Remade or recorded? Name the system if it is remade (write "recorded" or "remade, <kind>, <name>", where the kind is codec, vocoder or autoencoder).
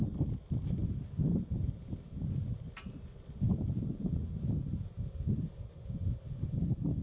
recorded